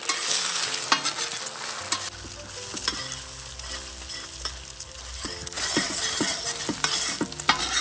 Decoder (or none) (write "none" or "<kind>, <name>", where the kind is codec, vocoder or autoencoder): none